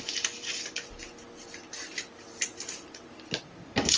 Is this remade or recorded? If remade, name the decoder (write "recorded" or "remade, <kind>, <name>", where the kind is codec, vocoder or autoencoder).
recorded